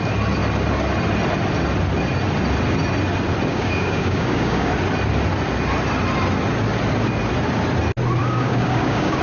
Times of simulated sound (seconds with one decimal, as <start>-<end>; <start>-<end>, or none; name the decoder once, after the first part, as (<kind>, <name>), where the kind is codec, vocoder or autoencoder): 3.5-4.7 (codec, DAC); 8.2-9.2